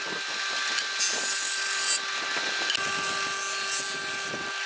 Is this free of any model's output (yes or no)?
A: yes